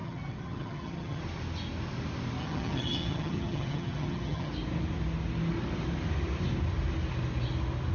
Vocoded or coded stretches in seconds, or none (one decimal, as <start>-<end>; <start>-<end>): 0.0-1.2; 2.4-4.5